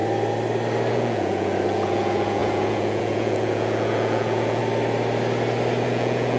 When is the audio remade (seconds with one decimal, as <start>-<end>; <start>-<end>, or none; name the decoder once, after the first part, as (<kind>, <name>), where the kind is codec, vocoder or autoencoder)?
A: 0.9-4.6 (vocoder, Vocos); 5.8-6.4